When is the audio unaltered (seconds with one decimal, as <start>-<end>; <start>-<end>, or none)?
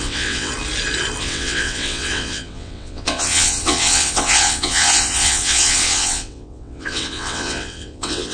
0.5-1.2